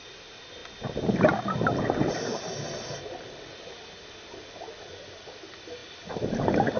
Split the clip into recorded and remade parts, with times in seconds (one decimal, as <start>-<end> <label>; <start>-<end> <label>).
0.0-6.8 recorded